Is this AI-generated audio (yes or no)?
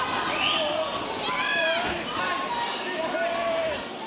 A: no